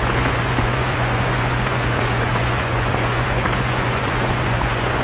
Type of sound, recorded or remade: remade